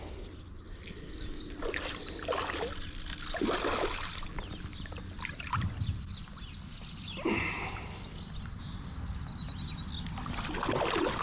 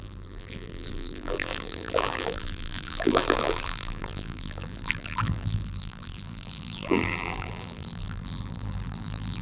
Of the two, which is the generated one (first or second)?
second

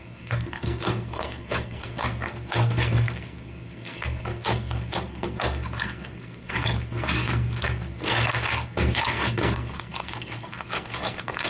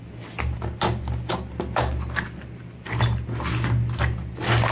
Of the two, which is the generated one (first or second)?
first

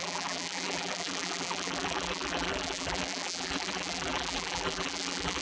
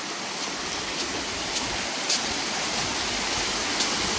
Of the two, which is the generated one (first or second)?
first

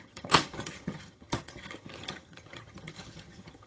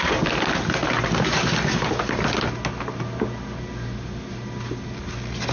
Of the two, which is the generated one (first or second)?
first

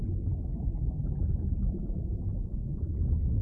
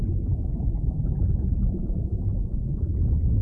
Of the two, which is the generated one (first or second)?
second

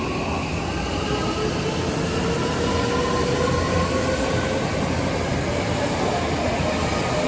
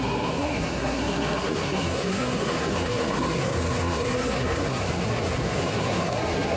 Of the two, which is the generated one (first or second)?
second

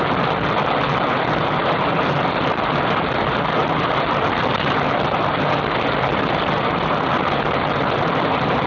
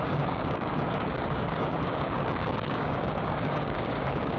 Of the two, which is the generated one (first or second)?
second